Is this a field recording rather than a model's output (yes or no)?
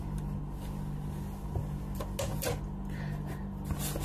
yes